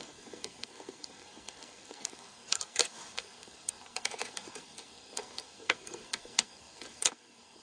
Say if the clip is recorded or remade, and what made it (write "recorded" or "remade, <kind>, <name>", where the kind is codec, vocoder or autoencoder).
remade, codec, SNAC